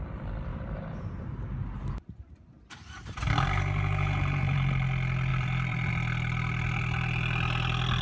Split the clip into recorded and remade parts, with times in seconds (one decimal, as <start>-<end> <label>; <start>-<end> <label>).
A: 0.0-0.5 recorded; 0.5-4.7 remade; 4.7-5.3 recorded; 5.3-5.9 remade; 5.9-8.0 recorded